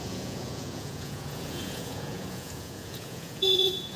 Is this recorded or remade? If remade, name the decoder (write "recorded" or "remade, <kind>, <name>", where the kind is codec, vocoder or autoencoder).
remade, vocoder, Vocos